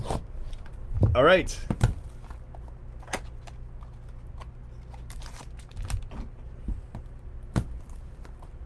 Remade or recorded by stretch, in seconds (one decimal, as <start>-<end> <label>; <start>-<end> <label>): 0.0-8.7 recorded